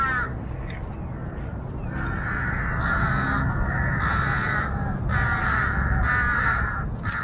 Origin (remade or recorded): recorded